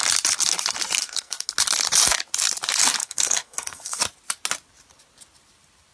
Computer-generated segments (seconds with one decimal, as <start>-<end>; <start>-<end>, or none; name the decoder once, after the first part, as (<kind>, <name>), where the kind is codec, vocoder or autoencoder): 1.0-1.5 (codec, SNAC); 3.0-4.0